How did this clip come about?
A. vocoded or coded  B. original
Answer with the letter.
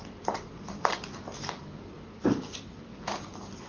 B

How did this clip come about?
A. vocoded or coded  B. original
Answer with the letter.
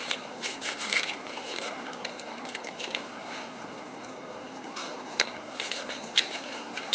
A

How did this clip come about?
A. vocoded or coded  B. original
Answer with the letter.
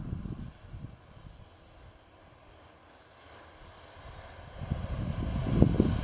B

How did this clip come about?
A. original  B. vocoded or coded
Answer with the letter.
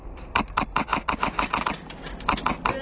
A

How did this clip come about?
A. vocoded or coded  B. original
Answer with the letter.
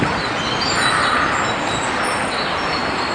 B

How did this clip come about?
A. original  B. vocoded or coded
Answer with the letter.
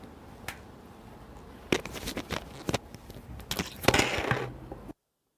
A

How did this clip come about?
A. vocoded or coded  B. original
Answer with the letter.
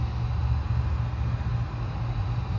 B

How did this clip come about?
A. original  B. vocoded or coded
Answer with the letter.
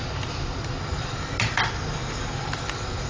A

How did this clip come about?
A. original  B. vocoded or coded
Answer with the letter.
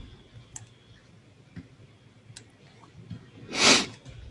A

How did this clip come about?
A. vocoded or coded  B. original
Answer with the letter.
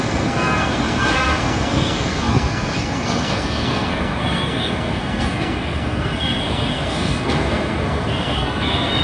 A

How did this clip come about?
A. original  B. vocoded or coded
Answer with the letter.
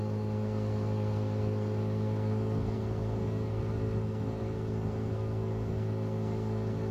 B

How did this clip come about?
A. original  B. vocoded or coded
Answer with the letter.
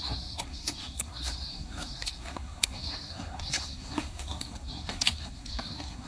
B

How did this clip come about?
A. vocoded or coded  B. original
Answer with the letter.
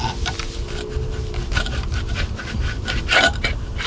B